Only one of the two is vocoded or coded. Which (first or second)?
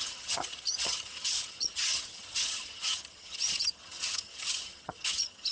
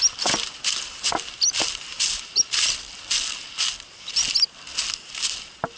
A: first